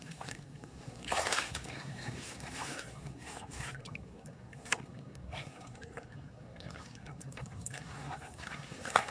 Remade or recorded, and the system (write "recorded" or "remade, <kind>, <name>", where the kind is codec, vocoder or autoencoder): remade, codec, SNAC